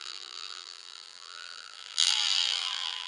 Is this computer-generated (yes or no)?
yes